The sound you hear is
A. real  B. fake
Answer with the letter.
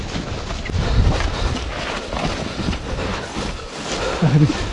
A